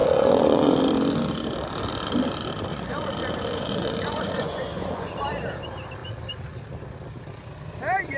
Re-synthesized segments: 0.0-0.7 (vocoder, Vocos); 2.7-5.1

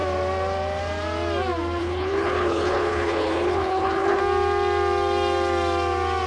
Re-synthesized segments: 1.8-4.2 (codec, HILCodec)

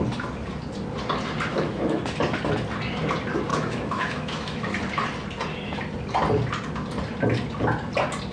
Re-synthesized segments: 1.5-2.0 (autoencoder, DAC-VAE); 3.5-4.8

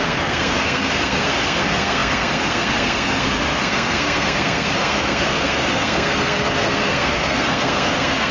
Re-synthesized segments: 0.0-8.3 (codec, SNAC)